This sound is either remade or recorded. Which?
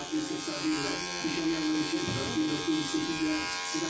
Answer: recorded